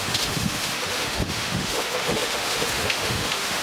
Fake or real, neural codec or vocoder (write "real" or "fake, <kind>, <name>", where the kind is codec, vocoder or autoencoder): fake, autoencoder, DAC-VAE